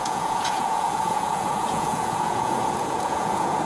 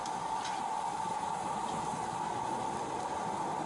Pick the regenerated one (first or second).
first